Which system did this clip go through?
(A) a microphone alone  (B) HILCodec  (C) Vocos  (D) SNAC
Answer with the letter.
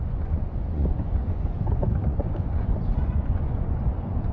C